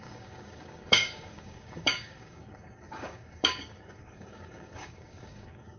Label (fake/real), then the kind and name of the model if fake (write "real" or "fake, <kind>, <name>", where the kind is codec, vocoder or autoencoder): fake, codec, DAC